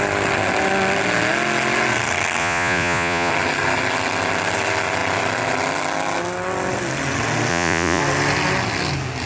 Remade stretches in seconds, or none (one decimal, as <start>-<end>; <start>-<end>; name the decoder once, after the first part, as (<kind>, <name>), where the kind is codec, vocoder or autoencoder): 2.4-3.3 (vocoder, Vocos); 7.5-8.0